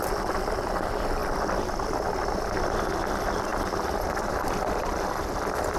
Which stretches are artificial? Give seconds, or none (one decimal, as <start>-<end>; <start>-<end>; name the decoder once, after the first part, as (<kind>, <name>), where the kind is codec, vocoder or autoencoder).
1.2-3.0 (vocoder, BigVGAN v2); 3.5-4.3